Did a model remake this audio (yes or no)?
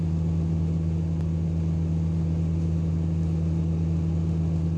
no